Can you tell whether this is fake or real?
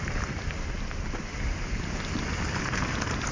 real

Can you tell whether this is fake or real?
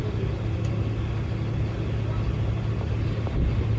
real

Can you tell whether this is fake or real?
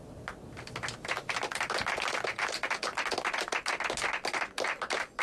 real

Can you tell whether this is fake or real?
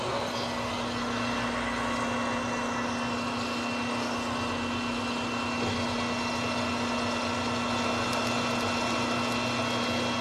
real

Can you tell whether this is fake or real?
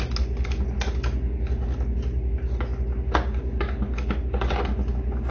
real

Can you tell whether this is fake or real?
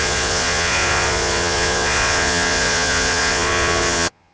fake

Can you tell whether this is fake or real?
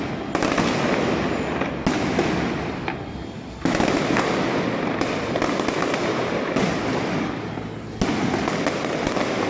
real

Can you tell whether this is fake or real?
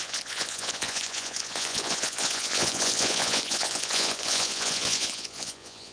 fake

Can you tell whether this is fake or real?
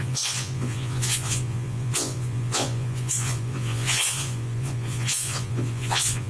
fake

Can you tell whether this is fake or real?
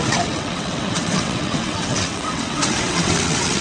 fake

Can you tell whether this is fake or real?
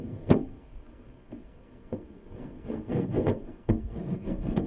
fake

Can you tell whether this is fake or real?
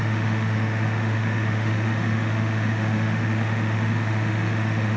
fake